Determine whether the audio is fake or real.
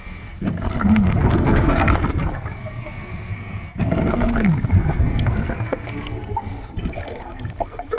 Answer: fake